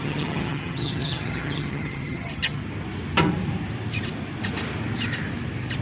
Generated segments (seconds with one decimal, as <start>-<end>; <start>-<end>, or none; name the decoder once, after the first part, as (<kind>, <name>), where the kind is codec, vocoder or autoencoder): 0.0-2.6 (vocoder, HiFi-GAN)